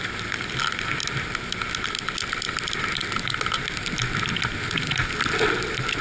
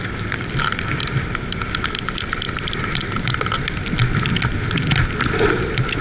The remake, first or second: second